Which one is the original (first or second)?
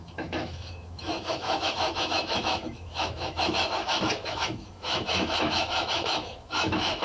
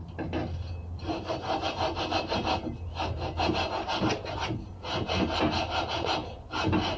second